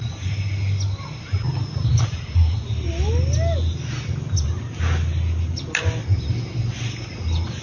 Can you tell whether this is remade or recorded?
recorded